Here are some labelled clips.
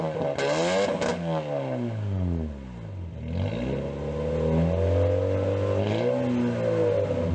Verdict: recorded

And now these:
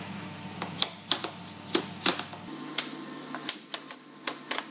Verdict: recorded